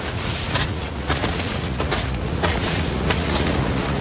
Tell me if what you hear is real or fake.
fake